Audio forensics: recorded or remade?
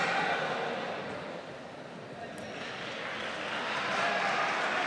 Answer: recorded